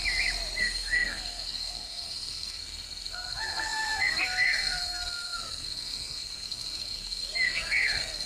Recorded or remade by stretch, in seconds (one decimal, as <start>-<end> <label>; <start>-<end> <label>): 0.0-0.6 recorded; 0.6-8.3 remade